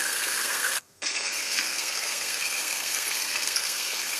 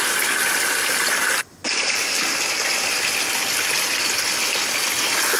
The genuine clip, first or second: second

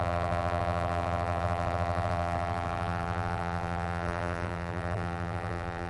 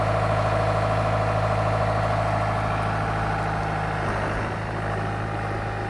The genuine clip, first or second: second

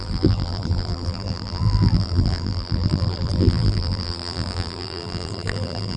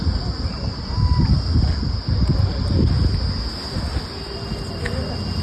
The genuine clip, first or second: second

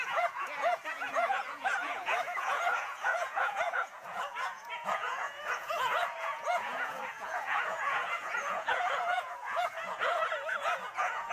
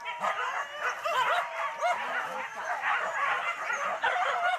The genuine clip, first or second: second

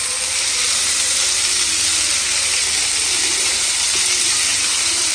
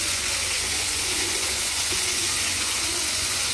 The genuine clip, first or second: first